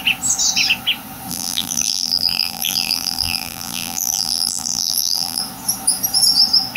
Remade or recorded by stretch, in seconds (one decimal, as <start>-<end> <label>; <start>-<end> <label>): 0.0-1.3 recorded; 1.3-5.4 remade; 5.4-6.8 recorded